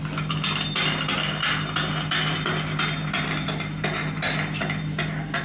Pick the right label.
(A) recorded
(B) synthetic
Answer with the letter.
A